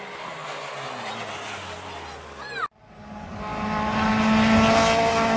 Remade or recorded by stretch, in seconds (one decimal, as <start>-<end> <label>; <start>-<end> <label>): 0.0-5.4 recorded